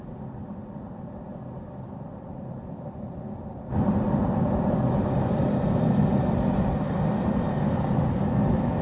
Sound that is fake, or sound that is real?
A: real